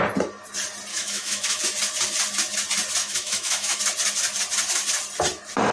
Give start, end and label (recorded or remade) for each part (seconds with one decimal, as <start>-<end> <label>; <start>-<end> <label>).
0.0-0.9 recorded; 0.9-1.6 remade; 1.6-3.0 recorded; 3.0-3.8 remade; 3.8-5.7 recorded